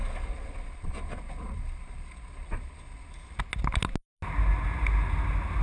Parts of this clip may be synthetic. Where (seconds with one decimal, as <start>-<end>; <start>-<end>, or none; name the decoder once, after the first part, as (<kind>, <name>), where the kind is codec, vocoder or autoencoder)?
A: 0.0-3.4 (vocoder, Vocos)